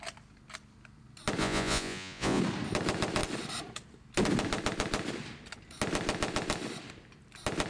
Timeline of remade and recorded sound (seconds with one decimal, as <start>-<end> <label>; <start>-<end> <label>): 0.0-1.4 recorded; 1.4-2.4 remade; 2.4-7.7 recorded